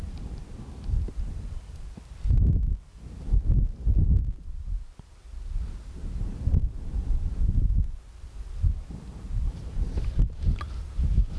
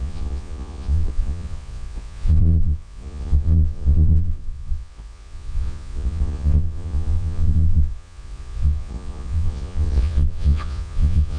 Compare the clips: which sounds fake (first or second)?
second